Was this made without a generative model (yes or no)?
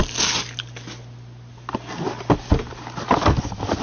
yes